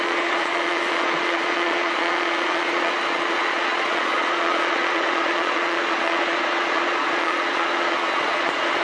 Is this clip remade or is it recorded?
remade